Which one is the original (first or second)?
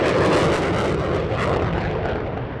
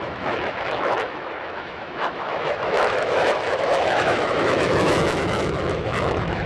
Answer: first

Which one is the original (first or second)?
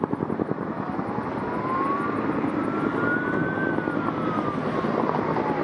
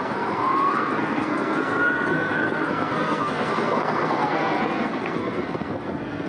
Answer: first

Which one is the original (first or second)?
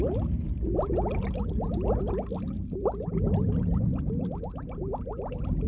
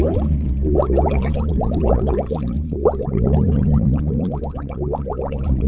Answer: first